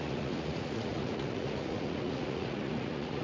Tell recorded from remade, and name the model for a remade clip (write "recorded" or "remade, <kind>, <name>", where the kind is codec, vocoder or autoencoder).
remade, vocoder, Vocos